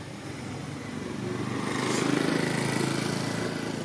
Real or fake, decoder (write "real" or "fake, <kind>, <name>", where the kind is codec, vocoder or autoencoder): real